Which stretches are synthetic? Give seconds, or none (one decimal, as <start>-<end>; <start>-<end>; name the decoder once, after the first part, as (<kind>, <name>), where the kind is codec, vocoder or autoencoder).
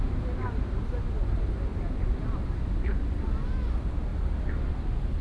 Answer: none